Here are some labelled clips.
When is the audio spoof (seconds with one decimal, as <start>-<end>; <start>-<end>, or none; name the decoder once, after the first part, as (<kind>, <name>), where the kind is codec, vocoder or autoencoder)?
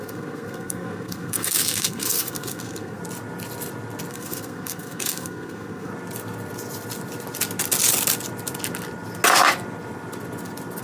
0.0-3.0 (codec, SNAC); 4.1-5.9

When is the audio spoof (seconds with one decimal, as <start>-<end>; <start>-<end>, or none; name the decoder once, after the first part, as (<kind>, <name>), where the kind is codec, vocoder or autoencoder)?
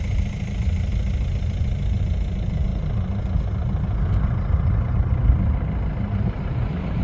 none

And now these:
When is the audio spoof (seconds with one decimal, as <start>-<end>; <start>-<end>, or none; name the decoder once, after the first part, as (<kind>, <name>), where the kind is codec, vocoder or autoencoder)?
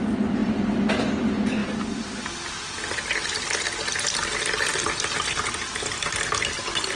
none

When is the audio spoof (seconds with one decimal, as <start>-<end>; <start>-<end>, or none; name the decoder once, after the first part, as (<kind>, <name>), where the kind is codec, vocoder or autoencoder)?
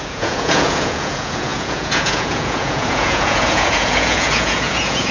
0.0-5.1 (vocoder, Vocos)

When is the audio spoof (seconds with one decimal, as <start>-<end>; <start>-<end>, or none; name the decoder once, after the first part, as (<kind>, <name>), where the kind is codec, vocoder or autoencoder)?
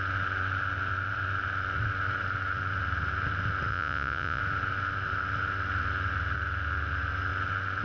3.7-4.4 (vocoder, Vocos)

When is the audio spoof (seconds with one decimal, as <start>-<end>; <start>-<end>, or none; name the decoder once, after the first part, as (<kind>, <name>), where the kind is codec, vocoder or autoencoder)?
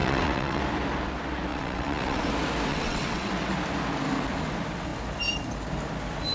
0.0-0.6 (vocoder, WaveNeXt); 1.5-2.3; 2.7-3.3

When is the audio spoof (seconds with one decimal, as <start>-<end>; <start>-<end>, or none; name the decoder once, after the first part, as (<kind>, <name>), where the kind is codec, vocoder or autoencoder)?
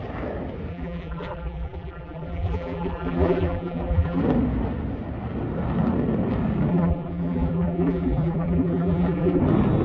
0.7-4.2 (vocoder, BigVGAN v2); 6.7-9.4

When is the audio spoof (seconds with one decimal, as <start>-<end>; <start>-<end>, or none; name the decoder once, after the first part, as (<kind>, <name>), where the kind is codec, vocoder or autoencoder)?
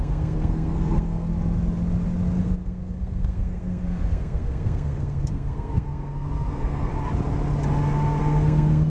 0.0-1.3 (codec, SNAC); 2.4-6.9; 8.2-8.9